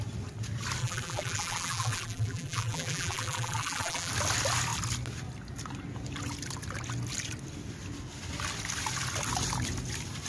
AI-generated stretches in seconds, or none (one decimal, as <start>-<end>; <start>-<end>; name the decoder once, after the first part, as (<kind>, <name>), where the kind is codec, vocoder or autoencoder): 0.8-4.1 (vocoder, BigVGAN v2)